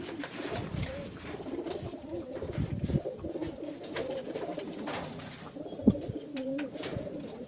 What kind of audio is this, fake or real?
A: fake